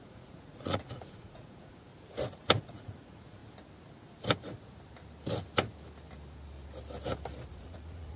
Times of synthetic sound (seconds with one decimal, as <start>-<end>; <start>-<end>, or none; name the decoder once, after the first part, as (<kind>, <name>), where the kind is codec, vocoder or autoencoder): 0.0-1.9 (vocoder, Vocos); 2.6-3.4; 7.5-8.2